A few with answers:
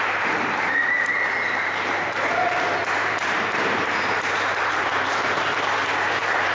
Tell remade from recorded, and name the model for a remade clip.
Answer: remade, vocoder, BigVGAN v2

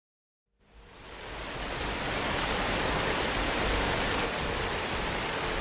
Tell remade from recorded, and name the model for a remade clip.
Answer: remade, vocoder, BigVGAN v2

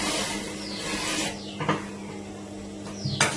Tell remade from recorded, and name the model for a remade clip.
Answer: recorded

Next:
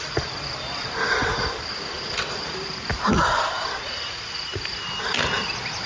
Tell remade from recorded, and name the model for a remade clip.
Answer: remade, vocoder, BigVGAN v2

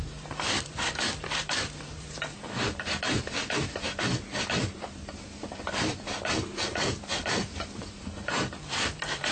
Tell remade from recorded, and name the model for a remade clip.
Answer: remade, vocoder, BigVGAN v2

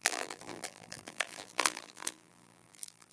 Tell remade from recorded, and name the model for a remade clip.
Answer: remade, vocoder, BigVGAN v2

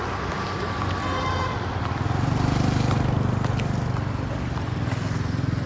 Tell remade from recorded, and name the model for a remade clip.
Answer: recorded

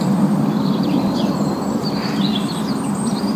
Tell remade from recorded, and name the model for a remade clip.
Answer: remade, vocoder, BigVGAN v2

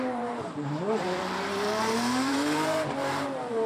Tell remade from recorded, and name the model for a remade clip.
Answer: remade, vocoder, BigVGAN v2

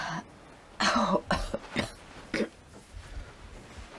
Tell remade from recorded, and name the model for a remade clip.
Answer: recorded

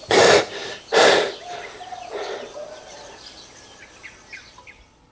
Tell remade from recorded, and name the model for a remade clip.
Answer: recorded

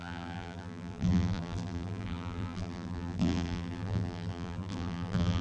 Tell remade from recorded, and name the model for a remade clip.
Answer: remade, vocoder, BigVGAN v2